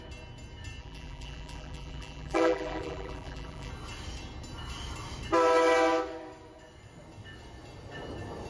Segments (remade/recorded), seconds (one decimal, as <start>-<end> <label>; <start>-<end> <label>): 0.0-0.8 recorded; 0.8-3.7 remade; 3.7-8.5 recorded